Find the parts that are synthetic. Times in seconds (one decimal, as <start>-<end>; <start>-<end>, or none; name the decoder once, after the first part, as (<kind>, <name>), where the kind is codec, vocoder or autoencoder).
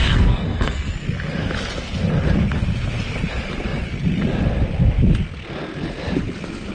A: 0.0-0.9 (codec, SNAC)